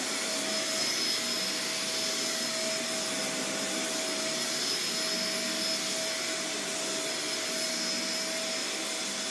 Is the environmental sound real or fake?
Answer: real